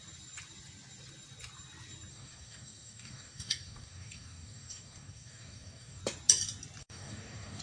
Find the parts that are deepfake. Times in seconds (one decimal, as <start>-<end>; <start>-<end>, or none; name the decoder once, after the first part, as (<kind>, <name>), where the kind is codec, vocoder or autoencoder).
2.1-6.0 (codec, DAC); 6.8-7.6